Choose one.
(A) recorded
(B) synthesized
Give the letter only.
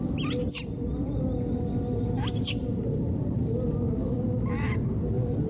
A